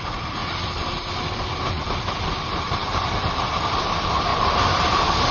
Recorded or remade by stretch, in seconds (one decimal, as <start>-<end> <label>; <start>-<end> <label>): 0.0-5.3 recorded